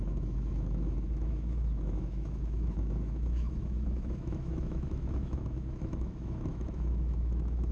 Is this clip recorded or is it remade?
remade